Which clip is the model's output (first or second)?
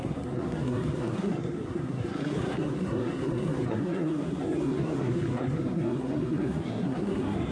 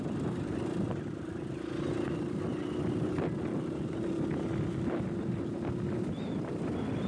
first